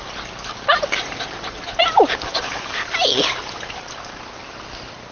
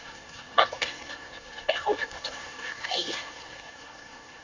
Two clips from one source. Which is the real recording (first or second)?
first